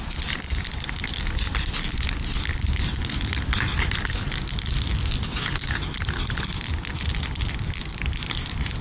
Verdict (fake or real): real